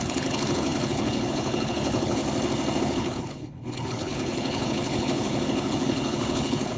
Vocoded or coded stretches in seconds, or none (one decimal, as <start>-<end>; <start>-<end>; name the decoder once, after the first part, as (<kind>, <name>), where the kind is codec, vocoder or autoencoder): 0.0-2.2 (codec, HILCodec); 2.8-6.8